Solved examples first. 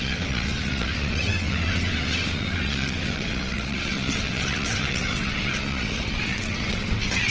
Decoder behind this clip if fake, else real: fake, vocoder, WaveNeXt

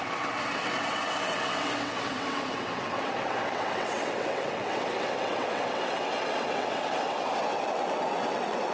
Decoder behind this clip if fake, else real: fake, vocoder, WaveNeXt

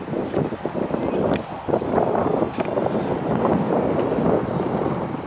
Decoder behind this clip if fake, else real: real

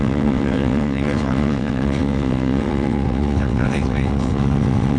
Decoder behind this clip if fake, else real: fake, vocoder, WaveNeXt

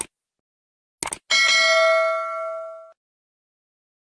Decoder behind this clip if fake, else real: real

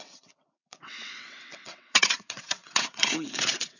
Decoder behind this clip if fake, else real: fake, vocoder, WaveNeXt